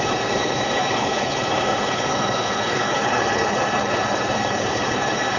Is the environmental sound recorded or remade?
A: remade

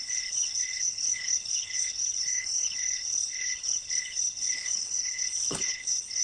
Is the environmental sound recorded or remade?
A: remade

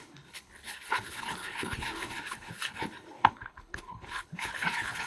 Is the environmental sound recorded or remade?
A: remade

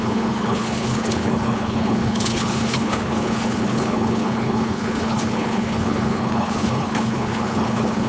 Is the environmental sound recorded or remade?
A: remade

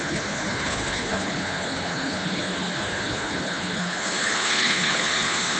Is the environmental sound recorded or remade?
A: remade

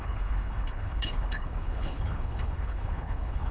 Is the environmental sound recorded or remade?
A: remade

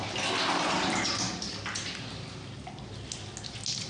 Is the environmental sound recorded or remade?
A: recorded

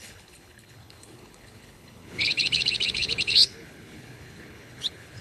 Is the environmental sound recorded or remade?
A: remade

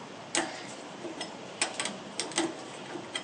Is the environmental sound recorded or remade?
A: recorded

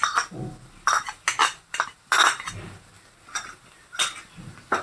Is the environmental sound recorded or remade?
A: recorded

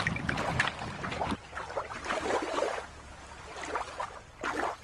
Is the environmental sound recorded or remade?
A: recorded